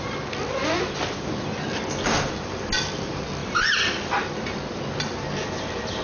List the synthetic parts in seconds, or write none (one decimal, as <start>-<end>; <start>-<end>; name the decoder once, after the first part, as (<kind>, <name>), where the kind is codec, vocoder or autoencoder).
3.4-4.3 (vocoder, BigVGAN v2)